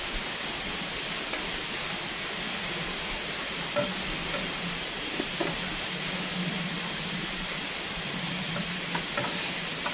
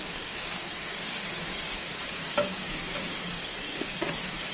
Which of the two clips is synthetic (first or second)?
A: second